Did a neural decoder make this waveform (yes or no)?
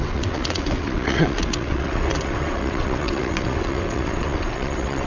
yes